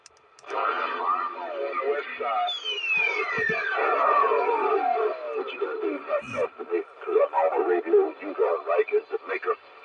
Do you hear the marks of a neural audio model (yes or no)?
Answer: no